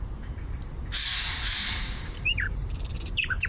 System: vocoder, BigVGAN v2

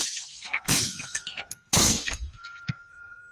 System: codec, SNAC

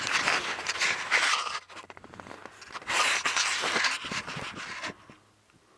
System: none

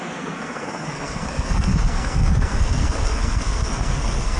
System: codec, SNAC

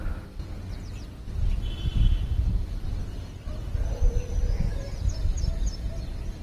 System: none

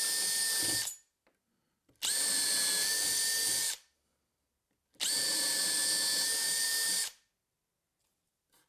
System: none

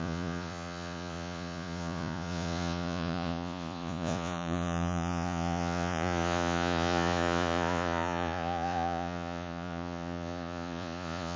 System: vocoder, Vocos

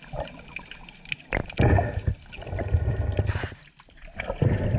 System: none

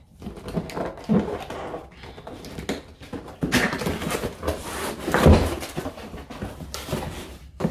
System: none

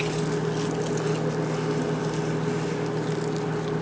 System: none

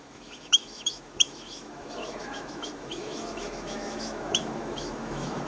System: autoencoder, DAC-VAE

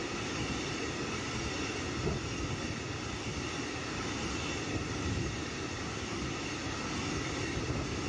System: none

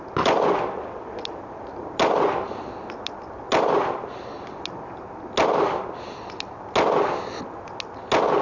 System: none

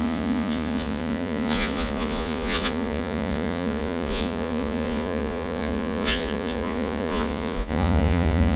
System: vocoder, Vocos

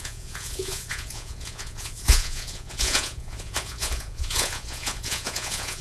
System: vocoder, Vocos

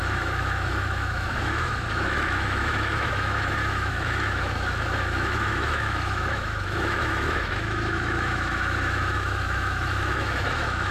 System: autoencoder, DAC-VAE